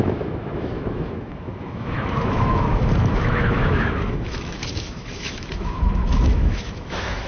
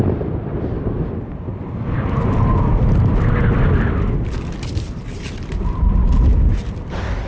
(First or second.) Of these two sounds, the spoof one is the first